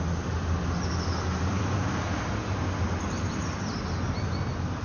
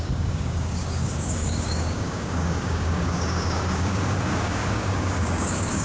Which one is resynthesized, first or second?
second